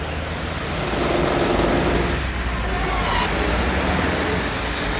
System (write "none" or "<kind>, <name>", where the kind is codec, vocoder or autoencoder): none